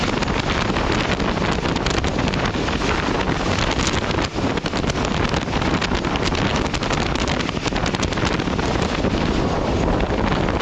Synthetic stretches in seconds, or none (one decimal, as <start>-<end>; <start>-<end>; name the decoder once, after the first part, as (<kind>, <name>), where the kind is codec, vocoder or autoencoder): none